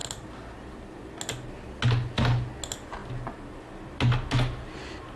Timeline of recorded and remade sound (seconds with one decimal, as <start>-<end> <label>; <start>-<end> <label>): 0.0-5.2 recorded